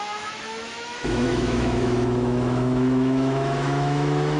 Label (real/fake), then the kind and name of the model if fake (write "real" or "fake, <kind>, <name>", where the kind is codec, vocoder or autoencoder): fake, autoencoder, DAC-VAE